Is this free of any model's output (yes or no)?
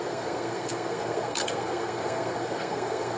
no